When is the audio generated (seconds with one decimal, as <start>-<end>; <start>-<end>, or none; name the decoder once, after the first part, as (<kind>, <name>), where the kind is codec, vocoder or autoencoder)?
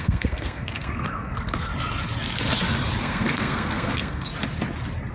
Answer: 0.0-1.7 (codec, SNAC); 3.0-4.3